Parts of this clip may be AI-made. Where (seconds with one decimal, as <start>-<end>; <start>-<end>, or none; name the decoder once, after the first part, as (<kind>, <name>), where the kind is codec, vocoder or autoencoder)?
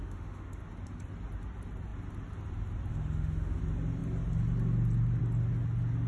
0.0-0.6 (autoencoder, DAC-VAE); 2.9-3.6